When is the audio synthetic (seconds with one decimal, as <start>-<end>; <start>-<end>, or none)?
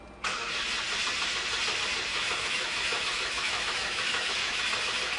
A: 2.1-4.6